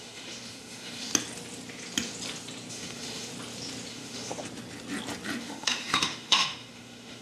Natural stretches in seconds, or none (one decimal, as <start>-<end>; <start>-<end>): 1.1-2.7; 3.3-3.9; 4.3-5.4